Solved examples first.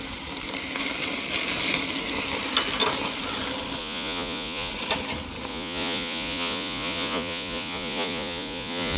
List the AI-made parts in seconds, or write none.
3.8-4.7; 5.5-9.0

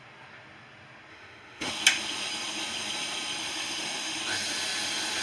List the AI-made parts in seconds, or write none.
1.1-1.7; 3.4-4.2

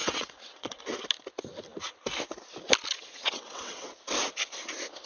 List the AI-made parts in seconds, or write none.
0.0-0.8; 3.0-3.9

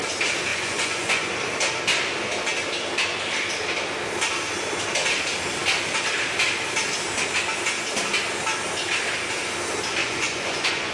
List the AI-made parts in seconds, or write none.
0.5-1.3; 10.0-10.9

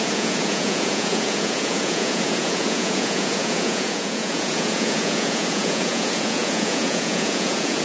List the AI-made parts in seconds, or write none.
0.0-7.8

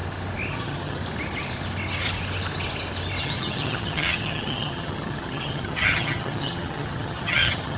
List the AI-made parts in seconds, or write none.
0.5-1.0; 3.2-7.8